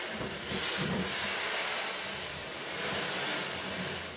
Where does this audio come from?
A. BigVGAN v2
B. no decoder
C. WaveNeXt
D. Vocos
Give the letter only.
B